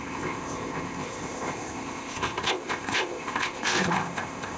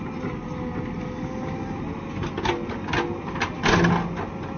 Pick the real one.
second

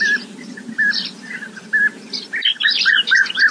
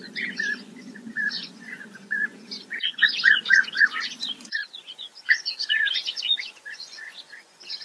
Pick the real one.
first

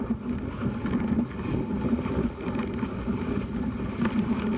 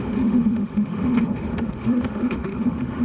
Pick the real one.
first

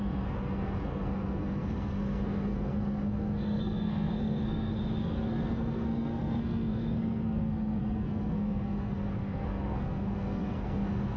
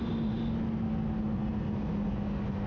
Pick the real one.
second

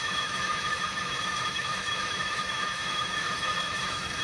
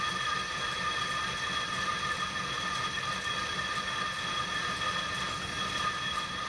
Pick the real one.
second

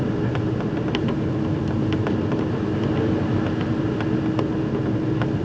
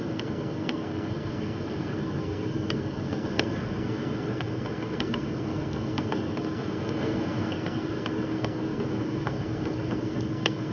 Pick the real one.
first